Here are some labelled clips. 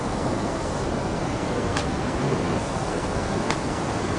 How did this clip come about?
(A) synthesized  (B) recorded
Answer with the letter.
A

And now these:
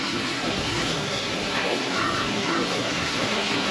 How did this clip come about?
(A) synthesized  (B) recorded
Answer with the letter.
A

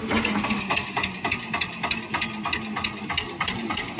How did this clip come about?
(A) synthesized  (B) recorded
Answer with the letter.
B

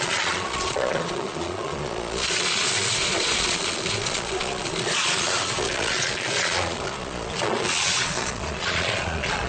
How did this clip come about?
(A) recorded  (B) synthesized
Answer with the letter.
B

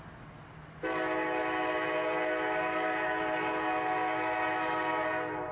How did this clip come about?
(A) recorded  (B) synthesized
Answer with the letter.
A